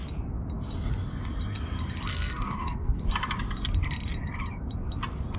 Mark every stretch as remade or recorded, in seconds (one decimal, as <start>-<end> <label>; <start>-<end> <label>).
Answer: 0.0-2.1 recorded; 2.1-3.0 remade; 3.0-5.4 recorded